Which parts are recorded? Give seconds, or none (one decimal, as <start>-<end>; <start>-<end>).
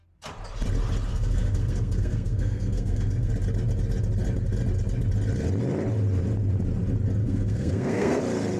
0.0-1.1; 3.3-7.2; 8.2-8.6